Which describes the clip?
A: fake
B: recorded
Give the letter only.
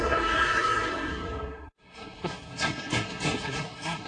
A